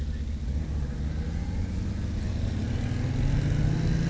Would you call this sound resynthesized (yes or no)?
no